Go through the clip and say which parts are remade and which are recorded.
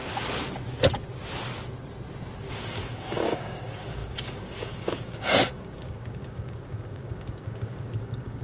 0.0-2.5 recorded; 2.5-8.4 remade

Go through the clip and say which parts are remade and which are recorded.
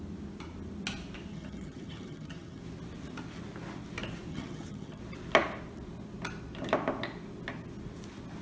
0.0-1.3 recorded; 1.3-2.6 remade; 2.6-4.3 recorded; 4.3-5.0 remade; 5.0-8.4 recorded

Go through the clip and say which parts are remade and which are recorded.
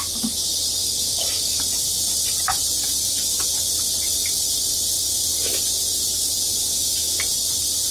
0.0-0.8 recorded; 0.8-1.6 remade; 1.6-3.0 recorded; 3.0-3.5 remade; 3.5-6.5 recorded; 6.5-7.2 remade; 7.2-7.9 recorded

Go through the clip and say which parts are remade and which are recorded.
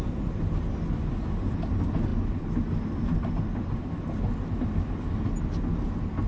0.0-6.3 recorded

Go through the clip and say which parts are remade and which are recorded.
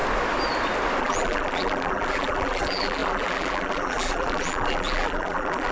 0.0-1.0 recorded; 1.0-5.7 remade